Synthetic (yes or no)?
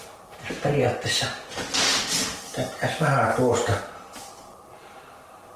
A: no